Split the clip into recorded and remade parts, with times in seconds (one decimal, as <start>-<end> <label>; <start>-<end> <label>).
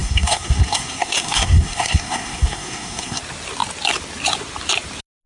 0.0-3.2 remade; 3.2-5.3 recorded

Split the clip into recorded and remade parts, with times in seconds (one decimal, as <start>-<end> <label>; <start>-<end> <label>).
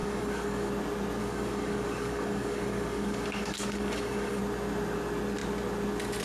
0.0-0.7 remade; 0.7-1.2 recorded; 1.2-4.4 remade; 4.4-6.2 recorded